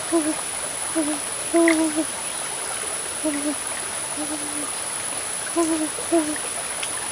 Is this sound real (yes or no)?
yes